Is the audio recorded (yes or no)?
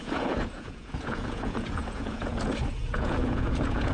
no